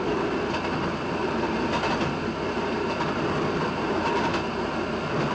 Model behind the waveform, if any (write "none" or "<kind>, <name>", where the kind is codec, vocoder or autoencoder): none